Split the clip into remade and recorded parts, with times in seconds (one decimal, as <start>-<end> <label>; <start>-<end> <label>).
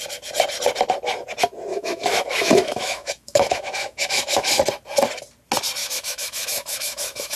0.0-1.7 recorded; 1.7-4.6 remade; 4.6-5.8 recorded; 5.8-7.4 remade